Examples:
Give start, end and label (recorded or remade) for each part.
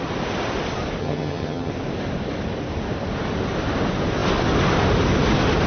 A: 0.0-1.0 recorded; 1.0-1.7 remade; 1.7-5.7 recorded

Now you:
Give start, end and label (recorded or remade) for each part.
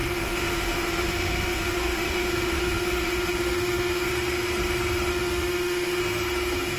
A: 0.0-4.1 remade; 4.1-5.1 recorded; 5.1-6.0 remade; 6.0-6.8 recorded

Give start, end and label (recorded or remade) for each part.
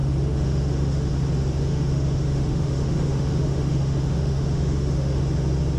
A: 0.0-1.1 remade; 1.1-1.7 recorded; 1.7-5.2 remade; 5.2-5.8 recorded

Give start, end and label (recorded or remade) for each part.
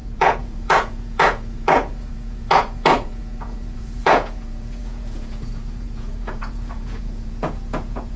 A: 0.0-8.2 remade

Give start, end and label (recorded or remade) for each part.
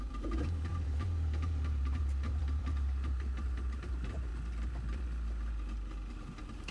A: 0.0-4.3 remade; 4.3-6.1 recorded; 6.1-6.7 remade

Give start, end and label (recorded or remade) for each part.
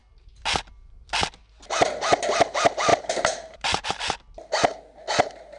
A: 0.0-2.9 recorded; 2.9-3.9 remade; 3.9-5.6 recorded